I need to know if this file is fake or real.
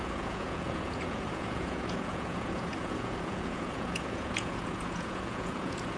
fake